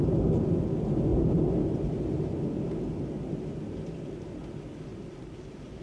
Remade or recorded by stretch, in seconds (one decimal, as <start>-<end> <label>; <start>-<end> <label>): 0.0-1.1 recorded; 1.1-2.2 remade; 2.2-4.9 recorded; 4.9-5.8 remade